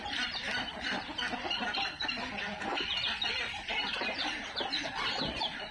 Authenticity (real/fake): fake